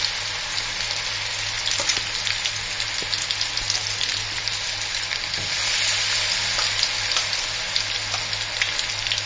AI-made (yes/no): no